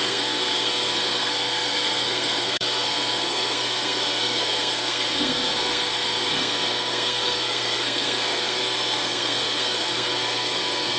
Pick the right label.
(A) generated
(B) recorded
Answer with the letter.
A